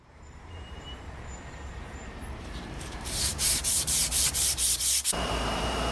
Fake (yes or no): yes